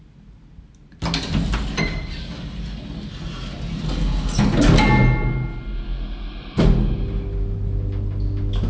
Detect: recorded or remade recorded